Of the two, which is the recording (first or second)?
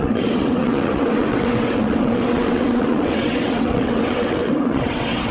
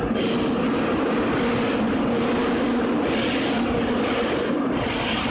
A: second